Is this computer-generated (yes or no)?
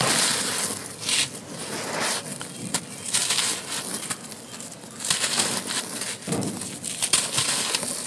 no